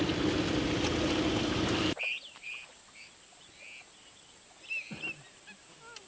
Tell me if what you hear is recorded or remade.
recorded